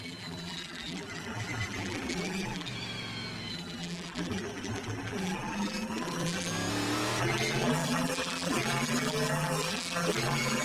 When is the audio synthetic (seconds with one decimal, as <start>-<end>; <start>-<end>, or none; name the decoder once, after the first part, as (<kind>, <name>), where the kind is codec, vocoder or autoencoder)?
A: 0.0-2.7 (vocoder, BigVGAN v2); 3.5-6.5; 7.2-10.6